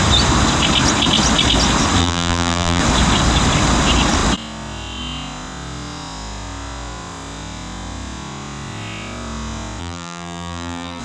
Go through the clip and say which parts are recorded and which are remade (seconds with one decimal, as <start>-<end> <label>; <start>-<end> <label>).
0.0-2.0 recorded; 2.0-2.8 remade; 2.8-9.8 recorded; 9.8-11.0 remade